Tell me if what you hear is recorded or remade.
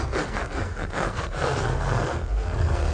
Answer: remade